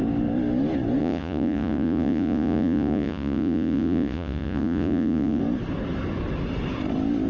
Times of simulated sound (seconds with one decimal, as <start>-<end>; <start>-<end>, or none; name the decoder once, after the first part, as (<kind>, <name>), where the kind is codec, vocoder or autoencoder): 1.0-5.4 (vocoder, Vocos)